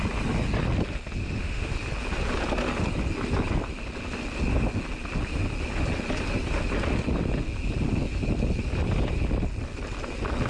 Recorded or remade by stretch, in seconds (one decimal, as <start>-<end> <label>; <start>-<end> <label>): 0.0-1.2 recorded; 1.2-1.7 remade; 1.7-10.5 recorded